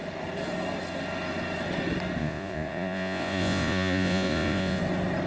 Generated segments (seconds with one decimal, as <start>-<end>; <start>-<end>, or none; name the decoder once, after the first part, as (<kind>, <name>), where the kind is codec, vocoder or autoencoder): 2.2-4.8 (vocoder, Vocos)

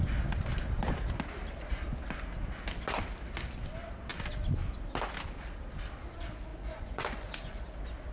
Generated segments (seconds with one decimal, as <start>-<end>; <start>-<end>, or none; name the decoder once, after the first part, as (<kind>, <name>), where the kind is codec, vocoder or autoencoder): 6.5-7.6 (vocoder, Vocos)

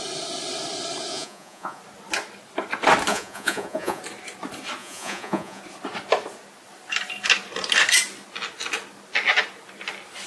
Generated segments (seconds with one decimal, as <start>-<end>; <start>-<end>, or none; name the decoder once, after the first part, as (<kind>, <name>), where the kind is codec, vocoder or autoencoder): 1.1-1.8 (vocoder, Vocos); 3.1-4.0; 4.8-5.6

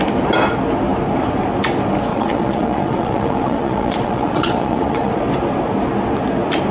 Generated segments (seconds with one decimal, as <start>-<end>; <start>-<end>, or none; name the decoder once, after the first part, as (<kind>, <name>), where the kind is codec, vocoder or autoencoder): 2.1-5.1 (vocoder, Vocos)